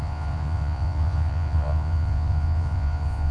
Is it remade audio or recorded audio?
remade